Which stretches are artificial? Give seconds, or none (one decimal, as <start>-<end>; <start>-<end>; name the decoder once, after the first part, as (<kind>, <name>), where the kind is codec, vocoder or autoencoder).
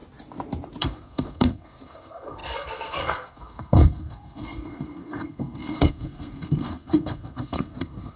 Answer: 0.8-8.2 (codec, SNAC)